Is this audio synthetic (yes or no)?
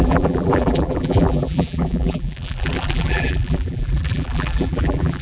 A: yes